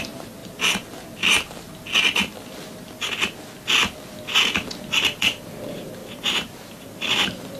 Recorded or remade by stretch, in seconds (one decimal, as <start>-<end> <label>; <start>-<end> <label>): 0.0-0.4 remade; 0.4-4.8 recorded; 4.8-6.0 remade; 6.0-6.7 recorded; 6.7-7.6 remade